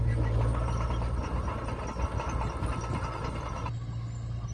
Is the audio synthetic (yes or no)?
no